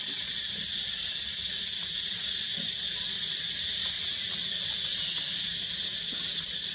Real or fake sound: real